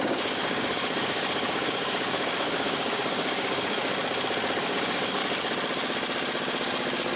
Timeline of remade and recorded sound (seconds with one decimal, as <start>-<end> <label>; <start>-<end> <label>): 0.0-3.8 remade; 3.8-4.6 recorded; 4.6-5.2 remade; 5.2-7.2 recorded